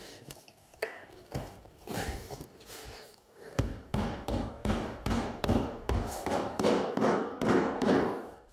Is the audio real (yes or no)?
no